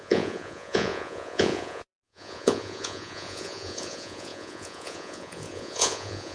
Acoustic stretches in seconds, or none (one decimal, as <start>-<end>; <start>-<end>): none